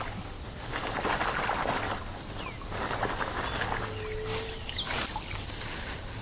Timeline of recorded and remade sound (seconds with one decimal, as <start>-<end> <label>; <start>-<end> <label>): 0.0-6.2 recorded